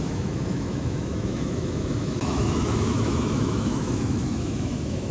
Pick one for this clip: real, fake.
fake